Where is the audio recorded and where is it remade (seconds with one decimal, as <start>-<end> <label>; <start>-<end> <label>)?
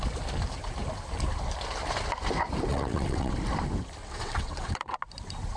0.0-2.7 recorded; 2.7-3.3 remade; 3.3-4.0 recorded; 4.0-5.0 remade; 5.0-5.6 recorded